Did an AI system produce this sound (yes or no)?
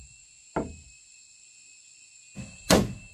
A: no